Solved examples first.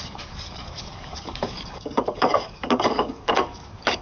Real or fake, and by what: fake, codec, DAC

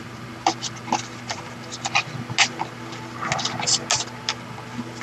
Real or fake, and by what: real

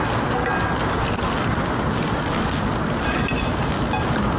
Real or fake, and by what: real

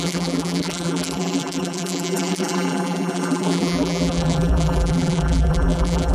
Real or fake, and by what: fake, vocoder, BigVGAN v2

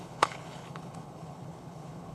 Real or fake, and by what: fake, codec, HILCodec